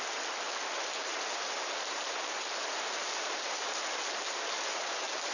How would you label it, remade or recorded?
recorded